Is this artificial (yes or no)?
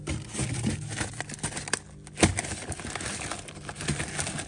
no